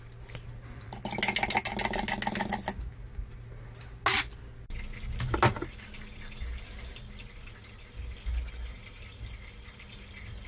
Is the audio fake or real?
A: real